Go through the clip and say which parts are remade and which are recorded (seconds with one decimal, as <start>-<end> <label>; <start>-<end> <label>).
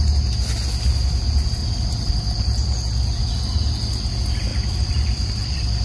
0.0-1.6 recorded; 1.6-2.1 remade; 2.1-4.5 recorded; 4.5-5.8 remade